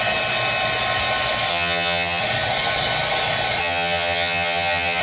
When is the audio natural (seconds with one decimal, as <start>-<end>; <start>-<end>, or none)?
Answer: 0.0-1.5; 2.2-3.6